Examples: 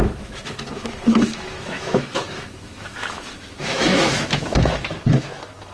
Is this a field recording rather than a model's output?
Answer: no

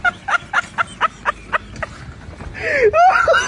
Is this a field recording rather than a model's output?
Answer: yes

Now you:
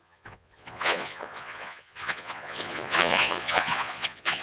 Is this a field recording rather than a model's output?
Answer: no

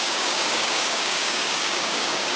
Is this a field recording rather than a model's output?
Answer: no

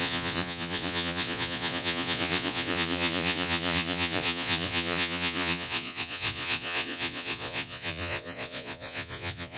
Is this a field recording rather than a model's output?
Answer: no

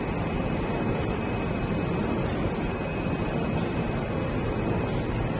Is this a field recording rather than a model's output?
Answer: no